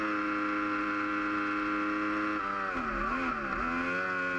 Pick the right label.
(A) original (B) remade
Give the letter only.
A